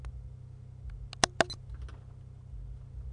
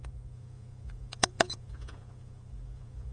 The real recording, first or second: first